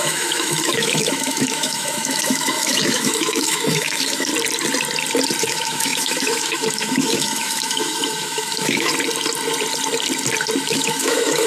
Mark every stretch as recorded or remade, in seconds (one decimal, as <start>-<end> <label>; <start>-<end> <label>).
0.0-4.3 remade; 4.3-5.4 recorded; 5.4-8.9 remade; 8.9-10.6 recorded; 10.6-11.5 remade